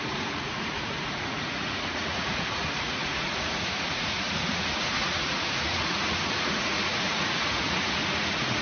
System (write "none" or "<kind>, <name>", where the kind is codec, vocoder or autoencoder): vocoder, Vocos